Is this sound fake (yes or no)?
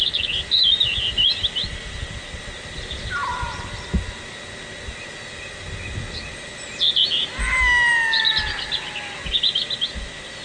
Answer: no